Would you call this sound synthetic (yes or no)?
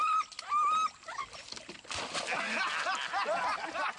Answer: no